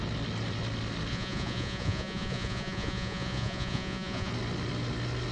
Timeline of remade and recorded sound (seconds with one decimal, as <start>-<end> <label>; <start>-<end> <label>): 0.0-1.1 recorded; 1.1-4.3 remade; 4.3-5.3 recorded